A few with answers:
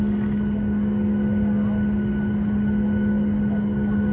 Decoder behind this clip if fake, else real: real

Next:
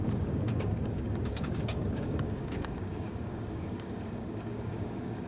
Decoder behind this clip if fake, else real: fake, codec, DAC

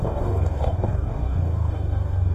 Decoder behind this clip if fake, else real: fake, codec, DAC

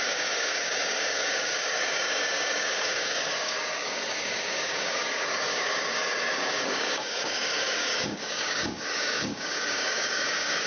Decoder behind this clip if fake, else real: fake, codec, DAC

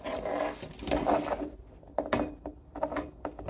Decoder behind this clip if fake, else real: real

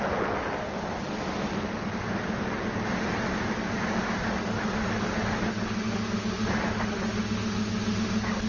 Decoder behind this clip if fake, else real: real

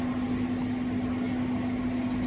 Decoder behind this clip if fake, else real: real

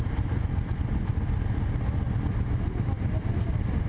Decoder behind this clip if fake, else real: real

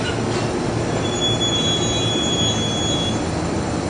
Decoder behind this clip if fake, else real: real